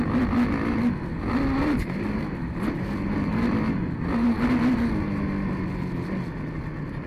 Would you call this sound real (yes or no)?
yes